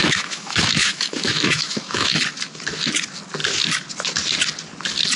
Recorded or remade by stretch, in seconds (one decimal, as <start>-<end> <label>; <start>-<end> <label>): 0.0-2.2 remade; 2.2-5.2 recorded

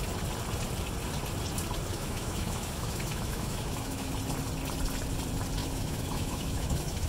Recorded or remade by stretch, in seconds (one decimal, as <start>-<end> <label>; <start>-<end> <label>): 0.0-1.9 recorded; 1.9-4.1 remade; 4.1-5.6 recorded; 5.6-7.1 remade

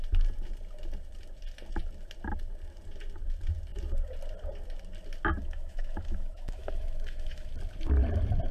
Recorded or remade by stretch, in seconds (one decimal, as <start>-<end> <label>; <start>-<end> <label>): 0.0-5.4 recorded; 5.4-7.5 remade; 7.5-8.5 recorded

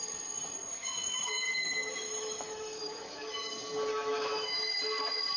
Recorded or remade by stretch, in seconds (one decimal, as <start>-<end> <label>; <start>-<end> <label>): 0.0-0.8 recorded; 0.8-3.5 remade; 3.5-3.9 recorded; 3.9-4.8 remade; 4.8-5.4 recorded

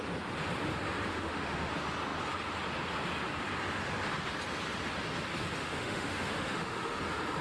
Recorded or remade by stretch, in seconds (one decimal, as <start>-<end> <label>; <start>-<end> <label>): 0.0-1.1 recorded; 1.1-1.7 remade; 1.7-5.6 recorded; 5.6-7.0 remade; 7.0-7.4 recorded

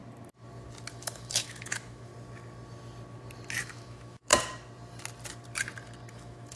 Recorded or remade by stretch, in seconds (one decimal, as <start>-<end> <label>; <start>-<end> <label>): 0.0-0.9 recorded; 0.9-2.1 remade; 2.1-3.6 recorded; 3.6-4.3 remade; 4.3-6.1 recorded; 6.1-6.6 remade

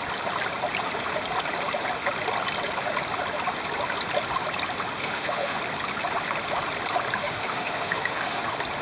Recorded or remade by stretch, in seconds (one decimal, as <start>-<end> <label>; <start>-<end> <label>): 0.0-5.0 recorded; 5.0-5.6 remade; 5.6-7.2 recorded; 7.2-8.4 remade; 8.4-8.8 recorded

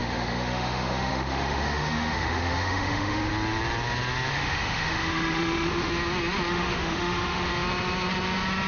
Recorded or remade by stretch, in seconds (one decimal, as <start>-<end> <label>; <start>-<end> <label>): 0.0-3.3 remade; 3.3-4.3 recorded; 4.3-5.9 remade; 5.9-6.5 recorded; 6.5-7.5 remade; 7.5-8.7 recorded